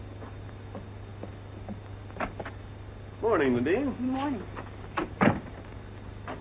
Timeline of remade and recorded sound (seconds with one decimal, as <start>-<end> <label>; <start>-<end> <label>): 0.0-5.0 recorded; 5.0-5.7 remade; 5.7-6.4 recorded